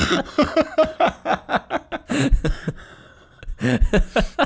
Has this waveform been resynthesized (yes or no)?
no